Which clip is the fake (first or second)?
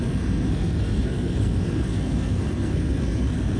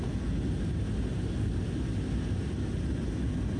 first